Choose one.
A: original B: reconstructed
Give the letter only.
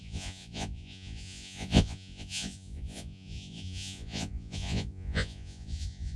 B